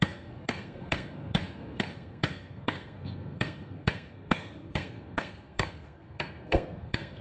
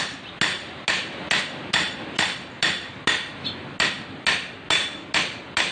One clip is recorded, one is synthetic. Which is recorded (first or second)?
second